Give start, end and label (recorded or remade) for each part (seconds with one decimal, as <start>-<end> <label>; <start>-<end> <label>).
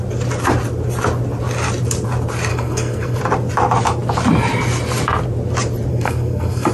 0.0-2.5 recorded; 2.5-3.2 remade; 3.2-5.9 recorded; 5.9-6.7 remade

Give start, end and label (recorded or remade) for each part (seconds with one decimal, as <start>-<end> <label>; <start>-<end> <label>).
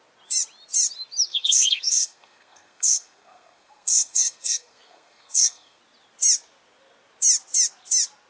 0.0-1.3 recorded; 1.3-5.8 remade; 5.8-8.3 recorded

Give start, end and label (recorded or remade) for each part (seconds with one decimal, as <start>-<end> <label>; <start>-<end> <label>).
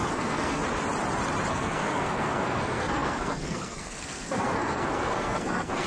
0.0-0.6 remade; 0.6-1.5 recorded; 1.5-5.9 remade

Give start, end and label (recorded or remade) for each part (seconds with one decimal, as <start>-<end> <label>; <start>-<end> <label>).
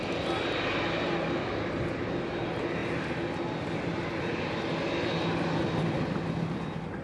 0.0-7.0 recorded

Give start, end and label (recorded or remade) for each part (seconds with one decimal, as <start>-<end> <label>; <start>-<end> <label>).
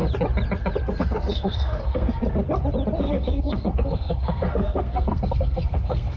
0.0-1.0 recorded; 1.0-2.2 remade; 2.2-3.0 recorded; 3.0-6.2 remade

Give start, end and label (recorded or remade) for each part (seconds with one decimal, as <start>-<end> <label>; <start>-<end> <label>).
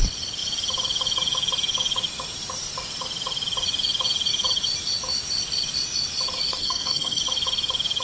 0.0-6.5 recorded; 6.5-7.2 remade; 7.2-8.0 recorded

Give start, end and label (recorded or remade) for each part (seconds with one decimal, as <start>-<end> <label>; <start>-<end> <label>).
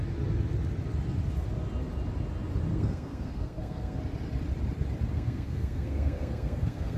0.0-2.7 recorded; 2.7-4.0 remade; 4.0-5.1 recorded; 5.1-7.0 remade